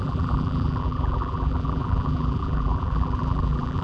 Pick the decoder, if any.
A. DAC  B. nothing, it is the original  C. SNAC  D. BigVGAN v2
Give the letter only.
D